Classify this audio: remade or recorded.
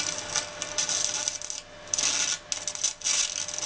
recorded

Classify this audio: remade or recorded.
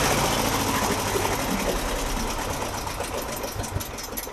recorded